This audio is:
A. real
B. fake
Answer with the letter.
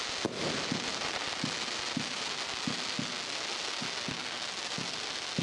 A